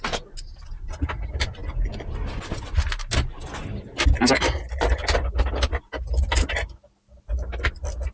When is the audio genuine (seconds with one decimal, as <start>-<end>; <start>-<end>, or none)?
0.0-8.1